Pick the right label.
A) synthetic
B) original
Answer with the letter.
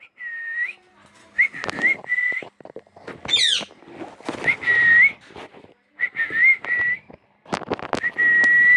B